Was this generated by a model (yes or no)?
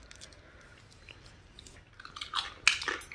no